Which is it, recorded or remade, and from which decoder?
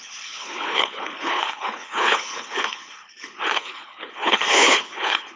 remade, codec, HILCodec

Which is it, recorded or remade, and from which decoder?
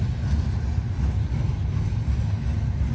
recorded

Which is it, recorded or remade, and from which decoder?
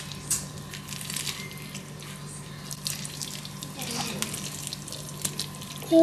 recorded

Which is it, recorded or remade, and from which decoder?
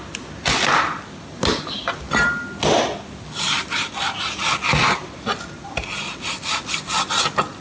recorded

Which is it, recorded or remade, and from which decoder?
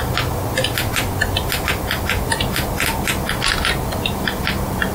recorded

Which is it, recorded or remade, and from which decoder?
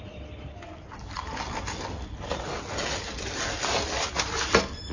recorded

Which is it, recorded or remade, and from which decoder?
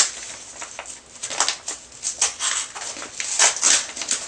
recorded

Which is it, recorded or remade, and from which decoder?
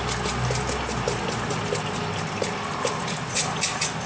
recorded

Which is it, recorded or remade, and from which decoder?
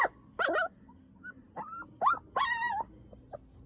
recorded